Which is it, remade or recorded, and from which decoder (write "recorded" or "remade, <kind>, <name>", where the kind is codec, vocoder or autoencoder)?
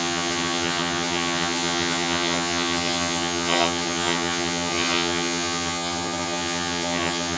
remade, vocoder, HiFi-GAN